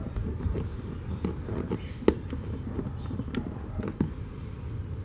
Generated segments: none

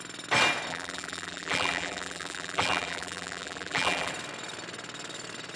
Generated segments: 0.7-4.1 (vocoder, BigVGAN v2)